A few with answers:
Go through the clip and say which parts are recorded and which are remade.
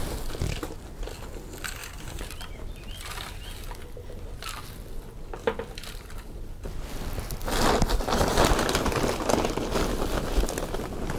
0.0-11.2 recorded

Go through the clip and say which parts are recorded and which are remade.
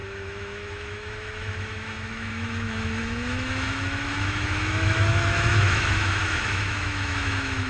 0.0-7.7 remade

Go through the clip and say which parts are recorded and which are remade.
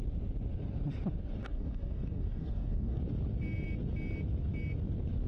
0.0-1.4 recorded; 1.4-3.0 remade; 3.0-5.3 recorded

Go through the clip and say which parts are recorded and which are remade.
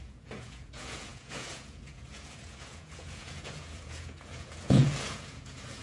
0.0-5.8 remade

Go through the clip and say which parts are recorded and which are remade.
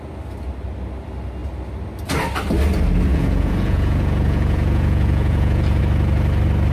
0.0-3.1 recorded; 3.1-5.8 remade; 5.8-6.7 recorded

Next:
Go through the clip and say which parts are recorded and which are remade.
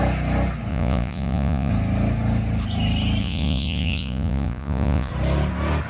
0.0-0.7 recorded; 0.7-1.7 remade; 1.7-3.2 recorded; 3.2-5.1 remade; 5.1-5.9 recorded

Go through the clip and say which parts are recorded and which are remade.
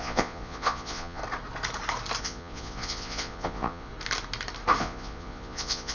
0.0-1.2 remade; 1.2-2.2 recorded; 2.2-3.9 remade; 3.9-4.8 recorded; 4.8-5.9 remade